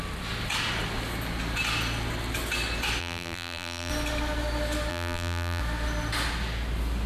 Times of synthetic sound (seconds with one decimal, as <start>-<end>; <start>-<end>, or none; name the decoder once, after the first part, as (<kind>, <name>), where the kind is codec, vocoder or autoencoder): 3.0-3.9 (vocoder, BigVGAN v2); 4.9-5.6